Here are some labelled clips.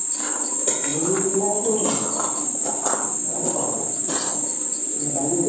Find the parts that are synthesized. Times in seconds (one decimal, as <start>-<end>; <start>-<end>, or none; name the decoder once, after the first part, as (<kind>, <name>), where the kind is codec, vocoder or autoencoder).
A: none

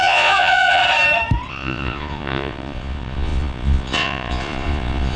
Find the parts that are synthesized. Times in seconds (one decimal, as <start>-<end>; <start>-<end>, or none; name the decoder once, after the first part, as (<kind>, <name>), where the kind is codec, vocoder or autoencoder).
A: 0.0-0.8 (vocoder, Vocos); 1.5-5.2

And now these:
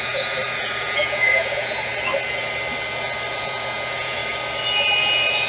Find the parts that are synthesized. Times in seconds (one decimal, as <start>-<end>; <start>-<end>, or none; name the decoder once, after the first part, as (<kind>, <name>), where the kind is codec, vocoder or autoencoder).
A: 0.0-1.9 (vocoder, Vocos); 3.4-4.2; 5.0-5.5